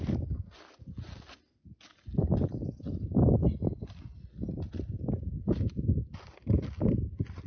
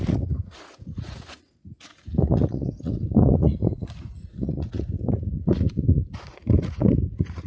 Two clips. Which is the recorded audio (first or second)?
first